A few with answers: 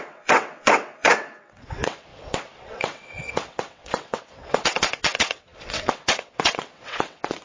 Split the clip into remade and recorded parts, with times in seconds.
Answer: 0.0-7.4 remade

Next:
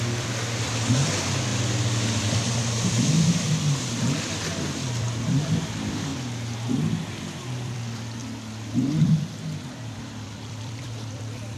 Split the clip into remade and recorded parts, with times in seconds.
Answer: 0.0-6.1 remade; 6.1-7.1 recorded; 7.1-8.2 remade; 8.2-9.0 recorded; 9.0-11.6 remade

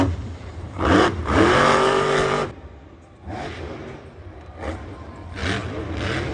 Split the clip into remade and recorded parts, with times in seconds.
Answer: 0.0-2.4 remade; 2.4-4.0 recorded; 4.0-5.4 remade; 5.4-6.3 recorded

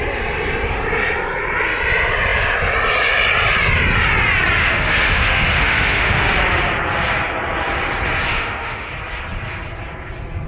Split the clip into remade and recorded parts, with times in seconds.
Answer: 0.0-4.6 recorded; 4.6-6.2 remade; 6.2-8.3 recorded; 8.3-8.9 remade; 8.9-10.5 recorded

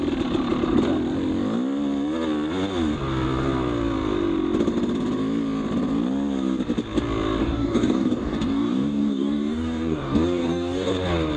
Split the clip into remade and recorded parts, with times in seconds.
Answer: 0.0-7.4 recorded; 7.4-10.9 remade; 10.9-11.4 recorded

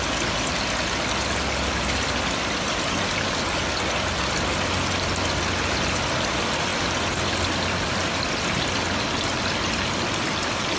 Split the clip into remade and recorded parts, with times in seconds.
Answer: 0.0-10.8 recorded

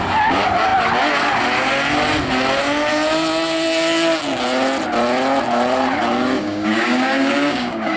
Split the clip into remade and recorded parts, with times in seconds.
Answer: 0.0-6.4 recorded; 6.4-8.0 remade